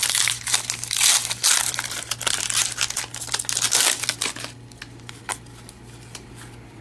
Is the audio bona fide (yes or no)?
yes